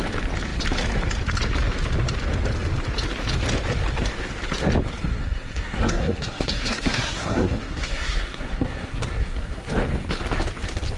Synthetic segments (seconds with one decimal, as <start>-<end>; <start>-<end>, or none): 5.1-9.7